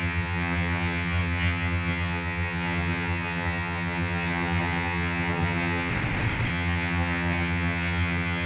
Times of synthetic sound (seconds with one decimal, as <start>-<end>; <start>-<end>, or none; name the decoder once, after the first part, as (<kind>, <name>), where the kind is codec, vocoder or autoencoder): 0.0-5.9 (vocoder, HiFi-GAN); 6.5-8.5